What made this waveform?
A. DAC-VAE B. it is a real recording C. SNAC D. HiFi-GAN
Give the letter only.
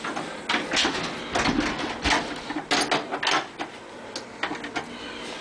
B